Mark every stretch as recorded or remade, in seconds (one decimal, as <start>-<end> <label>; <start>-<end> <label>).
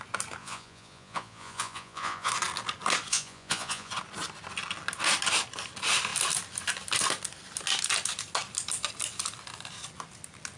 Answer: 0.0-0.4 recorded; 0.4-2.3 remade; 2.3-3.1 recorded; 3.1-3.9 remade; 3.9-10.6 recorded